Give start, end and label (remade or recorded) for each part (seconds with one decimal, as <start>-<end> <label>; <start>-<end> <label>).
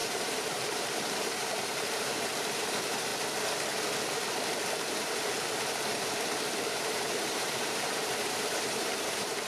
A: 0.0-3.1 remade; 3.1-6.7 recorded; 6.7-9.5 remade